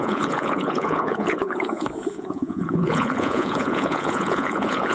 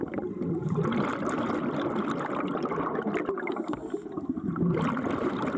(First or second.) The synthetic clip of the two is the first